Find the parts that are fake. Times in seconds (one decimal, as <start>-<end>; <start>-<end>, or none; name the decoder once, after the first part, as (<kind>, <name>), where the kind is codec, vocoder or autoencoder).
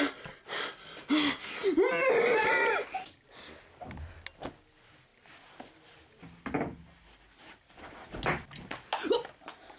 none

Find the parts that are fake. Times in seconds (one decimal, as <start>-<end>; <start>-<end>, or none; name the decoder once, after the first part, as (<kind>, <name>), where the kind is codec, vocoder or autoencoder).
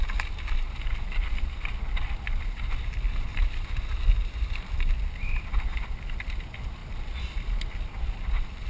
none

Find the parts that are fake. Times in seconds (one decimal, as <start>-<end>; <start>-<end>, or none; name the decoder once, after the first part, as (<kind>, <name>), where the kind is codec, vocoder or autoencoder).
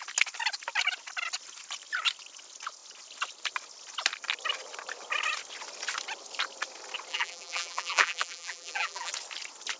7.1-9.1 (vocoder, BigVGAN v2)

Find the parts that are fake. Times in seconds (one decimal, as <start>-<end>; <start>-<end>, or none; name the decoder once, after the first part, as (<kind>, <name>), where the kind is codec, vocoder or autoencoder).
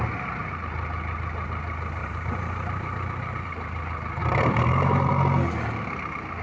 2.0-3.4 (vocoder, BigVGAN v2); 4.2-5.1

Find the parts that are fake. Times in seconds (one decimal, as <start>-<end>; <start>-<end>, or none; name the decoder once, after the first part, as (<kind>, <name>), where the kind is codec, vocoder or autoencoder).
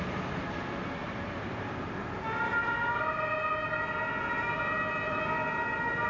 1.0-3.2 (vocoder, BigVGAN v2)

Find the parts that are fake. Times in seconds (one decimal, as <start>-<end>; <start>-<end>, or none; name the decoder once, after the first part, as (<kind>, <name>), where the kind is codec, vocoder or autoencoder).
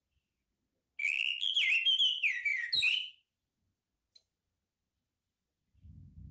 1.0-1.5 (vocoder, BigVGAN v2)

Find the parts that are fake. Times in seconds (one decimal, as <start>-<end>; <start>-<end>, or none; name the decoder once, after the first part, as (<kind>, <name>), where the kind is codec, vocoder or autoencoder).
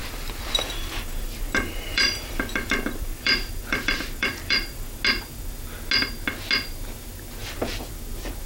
0.0-5.0 (vocoder, BigVGAN v2); 7.4-7.9